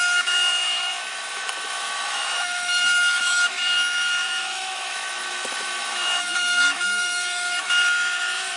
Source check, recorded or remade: remade